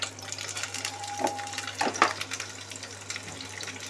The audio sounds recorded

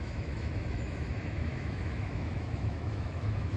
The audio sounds remade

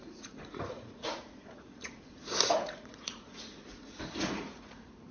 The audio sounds remade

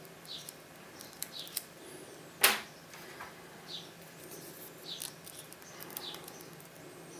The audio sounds recorded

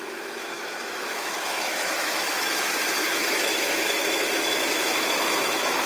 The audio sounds remade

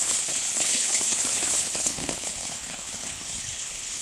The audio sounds remade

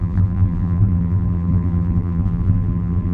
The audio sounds remade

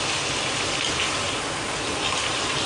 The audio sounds recorded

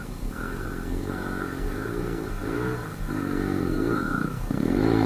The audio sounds remade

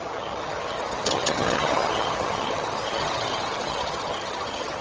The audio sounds remade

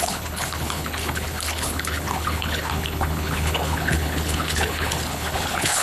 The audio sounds remade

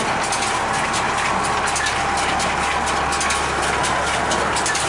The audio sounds recorded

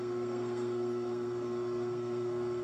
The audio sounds remade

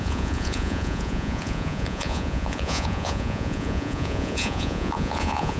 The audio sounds remade